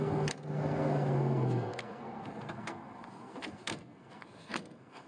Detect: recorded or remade remade